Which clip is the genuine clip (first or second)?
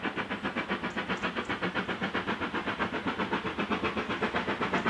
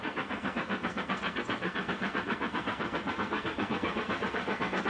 first